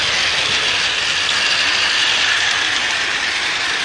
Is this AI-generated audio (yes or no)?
no